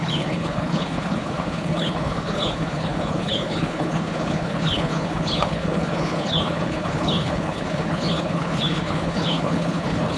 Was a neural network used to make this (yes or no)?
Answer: yes